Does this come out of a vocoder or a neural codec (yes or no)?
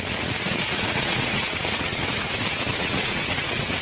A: yes